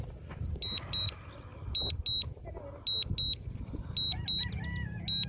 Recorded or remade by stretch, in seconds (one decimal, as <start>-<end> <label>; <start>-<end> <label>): 0.0-5.3 recorded